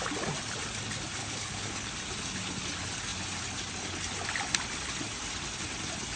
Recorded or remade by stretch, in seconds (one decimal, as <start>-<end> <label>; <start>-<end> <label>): 0.0-1.2 recorded; 1.2-1.9 remade; 1.9-6.2 recorded